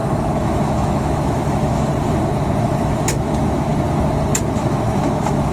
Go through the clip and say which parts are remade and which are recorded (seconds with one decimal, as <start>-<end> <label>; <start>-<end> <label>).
0.0-1.9 remade; 1.9-2.6 recorded; 2.6-3.7 remade; 3.7-4.6 recorded; 4.6-5.5 remade